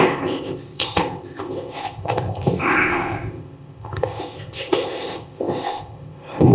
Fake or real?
fake